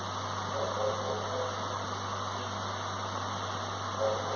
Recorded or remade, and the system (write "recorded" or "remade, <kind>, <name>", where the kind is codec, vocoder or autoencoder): recorded